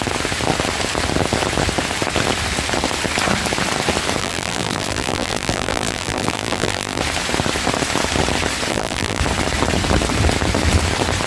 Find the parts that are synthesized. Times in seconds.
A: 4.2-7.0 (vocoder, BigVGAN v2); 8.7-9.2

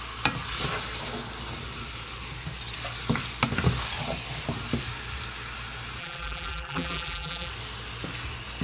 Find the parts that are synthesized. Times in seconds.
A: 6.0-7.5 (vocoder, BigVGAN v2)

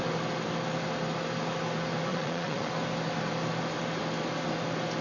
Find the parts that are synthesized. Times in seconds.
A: 2.1-2.7 (vocoder, Vocos)

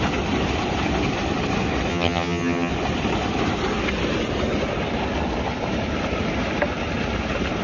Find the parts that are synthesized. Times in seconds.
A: 1.9-2.7 (vocoder, HiFi-GAN)

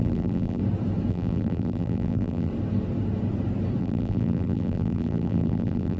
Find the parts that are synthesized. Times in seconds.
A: 0.0-0.6 (vocoder, BigVGAN v2); 1.1-2.5; 3.8-6.0

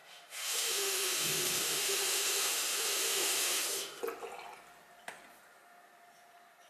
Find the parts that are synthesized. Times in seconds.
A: 0.0-4.0 (autoencoder, DAC-VAE)